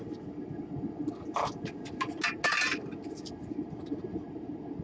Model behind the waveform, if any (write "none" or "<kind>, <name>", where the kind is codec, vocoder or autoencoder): none